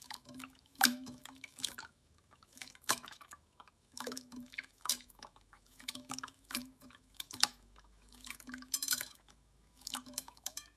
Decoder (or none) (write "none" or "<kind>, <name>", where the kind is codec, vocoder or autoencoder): autoencoder, DAC-VAE